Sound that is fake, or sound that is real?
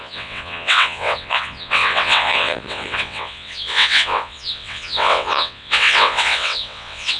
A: fake